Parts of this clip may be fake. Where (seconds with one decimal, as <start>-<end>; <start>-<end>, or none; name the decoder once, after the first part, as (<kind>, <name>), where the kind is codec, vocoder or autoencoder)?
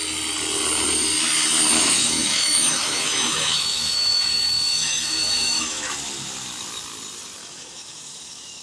1.8-5.9 (autoencoder, DAC-VAE); 7.4-8.6